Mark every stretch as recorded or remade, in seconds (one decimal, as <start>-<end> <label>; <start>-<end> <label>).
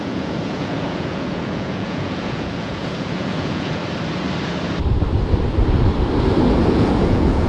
0.0-3.8 remade; 3.8-6.7 recorded; 6.7-7.5 remade